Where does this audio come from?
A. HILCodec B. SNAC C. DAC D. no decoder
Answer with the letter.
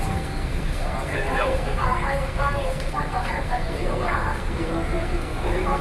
B